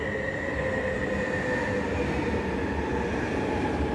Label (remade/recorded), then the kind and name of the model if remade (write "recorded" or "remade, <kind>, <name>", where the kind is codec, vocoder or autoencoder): recorded